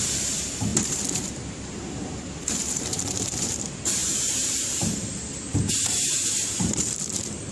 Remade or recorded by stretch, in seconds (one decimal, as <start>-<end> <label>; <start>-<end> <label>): 0.0-7.5 remade